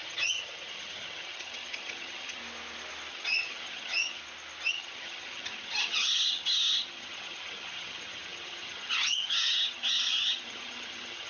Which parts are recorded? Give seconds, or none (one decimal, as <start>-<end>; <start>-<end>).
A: 2.4-3.1; 4.2-4.7